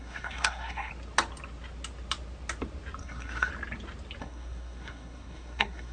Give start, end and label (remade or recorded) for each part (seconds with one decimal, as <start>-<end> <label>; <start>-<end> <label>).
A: 0.0-0.9 remade; 0.9-3.0 recorded; 3.0-3.5 remade; 3.5-4.2 recorded; 4.2-5.9 remade